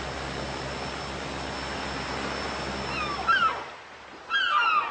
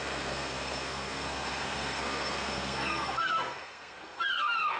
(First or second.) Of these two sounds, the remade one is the second